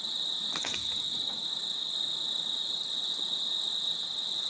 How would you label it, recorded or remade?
recorded